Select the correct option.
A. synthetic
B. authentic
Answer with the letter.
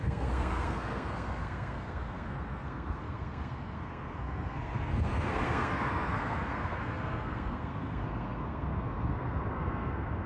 A